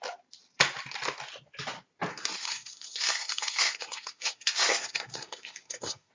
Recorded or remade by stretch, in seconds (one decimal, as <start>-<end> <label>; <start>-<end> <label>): 0.0-2.1 recorded; 2.1-6.1 remade